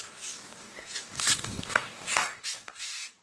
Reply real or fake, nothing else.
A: fake